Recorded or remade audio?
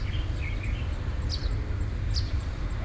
recorded